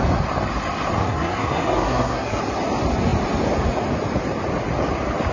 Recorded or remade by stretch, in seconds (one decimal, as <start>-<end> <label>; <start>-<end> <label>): 0.0-1.0 recorded; 1.0-2.4 remade; 2.4-5.3 recorded